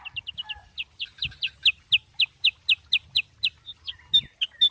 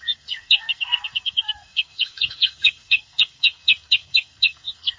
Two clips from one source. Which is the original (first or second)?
first